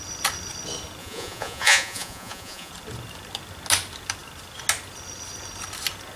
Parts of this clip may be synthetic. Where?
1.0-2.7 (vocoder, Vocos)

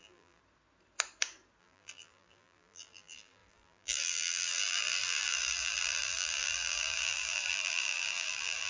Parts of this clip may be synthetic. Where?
0.0-0.4 (vocoder, BigVGAN v2); 1.6-8.7